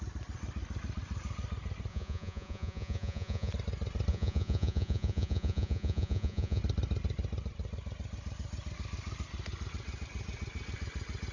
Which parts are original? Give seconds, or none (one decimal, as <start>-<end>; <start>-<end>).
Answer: 0.0-1.9; 3.5-4.1; 6.6-11.3